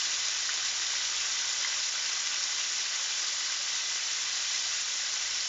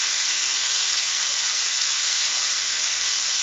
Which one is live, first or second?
first